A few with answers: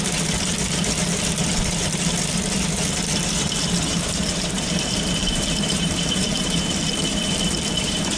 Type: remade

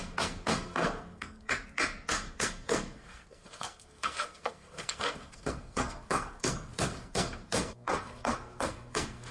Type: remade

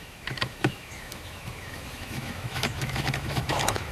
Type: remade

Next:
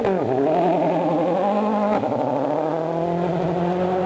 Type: recorded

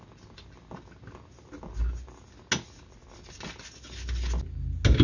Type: recorded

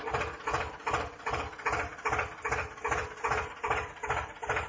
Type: recorded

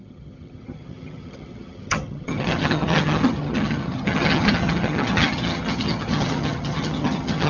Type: remade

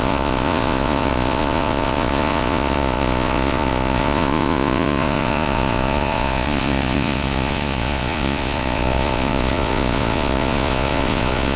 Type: remade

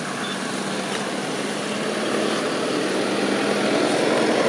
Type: recorded